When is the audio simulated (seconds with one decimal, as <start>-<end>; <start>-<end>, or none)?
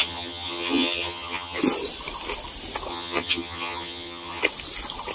0.0-1.6; 2.9-4.4